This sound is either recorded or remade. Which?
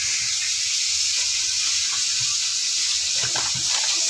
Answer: recorded